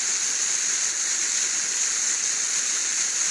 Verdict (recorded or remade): recorded